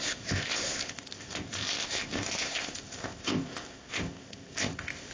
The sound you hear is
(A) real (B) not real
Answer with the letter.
B